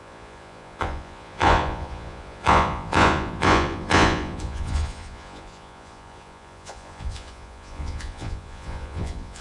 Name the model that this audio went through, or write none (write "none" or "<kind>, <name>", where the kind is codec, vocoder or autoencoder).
vocoder, Vocos